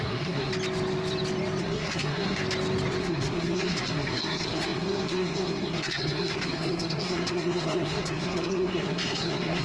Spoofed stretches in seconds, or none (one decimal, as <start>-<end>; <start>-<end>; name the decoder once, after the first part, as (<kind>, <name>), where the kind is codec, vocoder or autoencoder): 0.0-0.5 (codec, SNAC); 1.6-2.4; 3.0-9.6